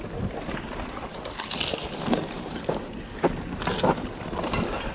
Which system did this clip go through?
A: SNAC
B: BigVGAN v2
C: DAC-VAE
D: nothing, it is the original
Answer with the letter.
D